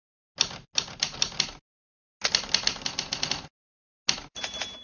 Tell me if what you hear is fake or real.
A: real